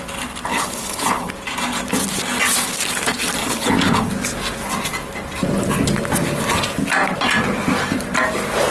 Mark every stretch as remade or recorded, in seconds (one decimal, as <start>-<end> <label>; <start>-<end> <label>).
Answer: 0.0-0.5 recorded; 0.5-1.3 remade; 1.3-3.4 recorded; 3.4-4.1 remade; 4.1-8.7 recorded